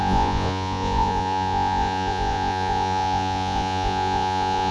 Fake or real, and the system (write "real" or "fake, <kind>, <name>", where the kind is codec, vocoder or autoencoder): fake, vocoder, Vocos